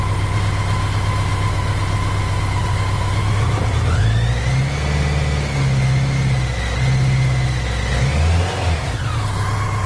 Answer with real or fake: real